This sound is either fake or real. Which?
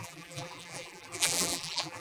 fake